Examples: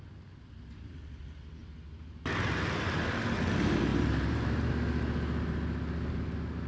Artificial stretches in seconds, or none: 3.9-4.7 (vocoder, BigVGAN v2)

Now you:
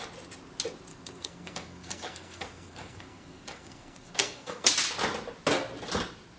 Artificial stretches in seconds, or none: 0.9-4.7 (codec, SNAC)

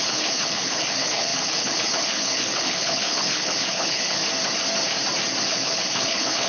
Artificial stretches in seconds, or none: 0.0-4.2 (codec, HILCodec); 5.5-6.5

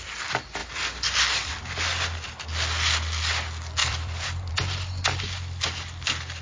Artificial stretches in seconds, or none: 0.6-1.5 (vocoder, BigVGAN v2); 3.8-5.0

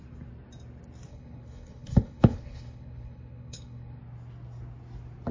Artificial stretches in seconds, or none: 1.1-4.0 (codec, HILCodec)